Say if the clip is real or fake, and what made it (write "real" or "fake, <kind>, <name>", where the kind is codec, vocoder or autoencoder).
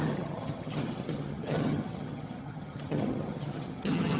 fake, vocoder, HiFi-GAN